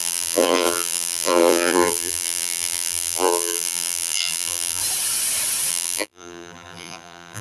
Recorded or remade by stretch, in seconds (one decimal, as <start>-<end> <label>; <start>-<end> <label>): 0.0-4.8 remade; 4.8-5.7 recorded; 5.7-7.4 remade